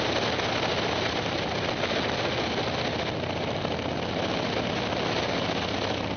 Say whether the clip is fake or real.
real